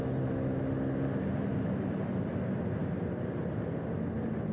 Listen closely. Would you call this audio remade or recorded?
recorded